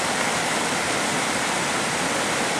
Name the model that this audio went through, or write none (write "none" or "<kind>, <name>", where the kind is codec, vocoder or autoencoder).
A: none